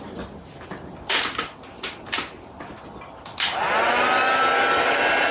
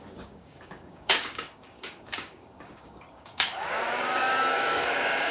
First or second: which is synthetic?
second